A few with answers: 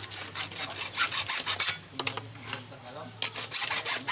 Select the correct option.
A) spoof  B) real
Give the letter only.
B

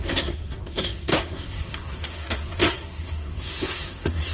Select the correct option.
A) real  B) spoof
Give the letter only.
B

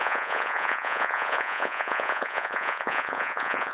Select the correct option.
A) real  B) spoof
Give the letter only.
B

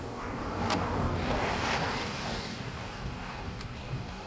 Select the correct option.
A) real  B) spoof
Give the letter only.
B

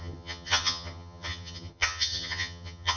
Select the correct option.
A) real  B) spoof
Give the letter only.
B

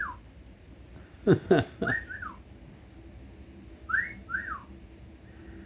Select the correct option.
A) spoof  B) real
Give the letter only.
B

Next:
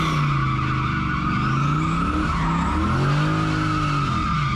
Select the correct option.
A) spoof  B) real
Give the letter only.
B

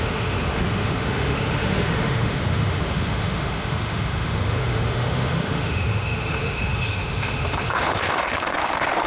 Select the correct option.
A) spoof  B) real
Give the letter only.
A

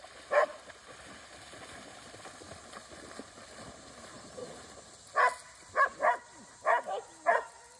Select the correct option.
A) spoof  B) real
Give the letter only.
B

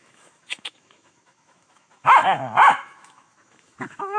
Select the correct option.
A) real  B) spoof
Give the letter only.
B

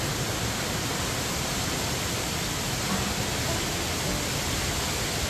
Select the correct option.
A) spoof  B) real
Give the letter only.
B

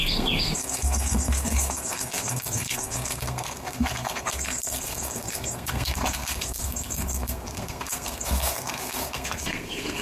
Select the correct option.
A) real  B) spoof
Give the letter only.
B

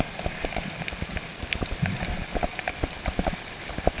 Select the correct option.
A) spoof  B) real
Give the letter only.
B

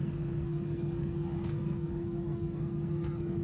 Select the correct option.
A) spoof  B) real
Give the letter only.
A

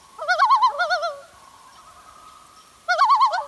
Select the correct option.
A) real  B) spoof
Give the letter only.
A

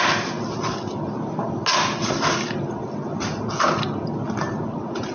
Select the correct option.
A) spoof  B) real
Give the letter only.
B